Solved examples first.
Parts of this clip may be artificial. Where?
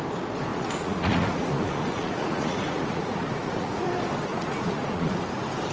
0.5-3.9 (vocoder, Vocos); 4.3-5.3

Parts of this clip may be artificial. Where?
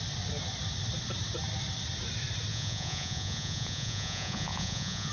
2.5-5.1 (vocoder, Vocos)